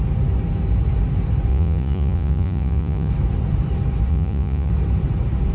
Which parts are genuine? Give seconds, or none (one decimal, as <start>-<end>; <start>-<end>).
0.0-1.5; 3.1-4.1; 4.7-5.5